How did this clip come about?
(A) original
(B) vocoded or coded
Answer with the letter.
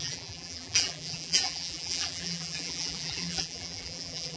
B